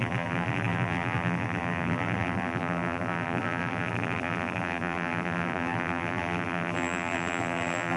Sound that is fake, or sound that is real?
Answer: fake